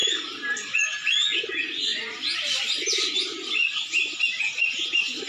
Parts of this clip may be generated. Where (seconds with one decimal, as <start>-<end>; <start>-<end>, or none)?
1.4-1.9; 2.5-5.3